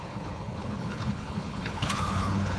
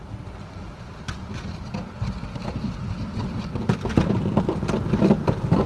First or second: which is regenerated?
first